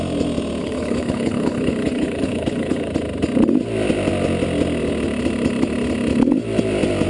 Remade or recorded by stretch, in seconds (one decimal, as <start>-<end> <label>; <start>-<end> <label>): 0.0-0.6 recorded; 0.6-2.9 remade; 2.9-7.1 recorded